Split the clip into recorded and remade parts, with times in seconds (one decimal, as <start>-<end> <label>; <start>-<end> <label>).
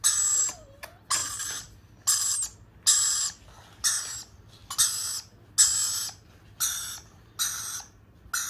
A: 0.0-8.5 recorded